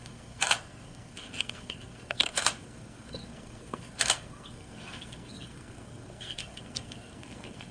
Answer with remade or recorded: remade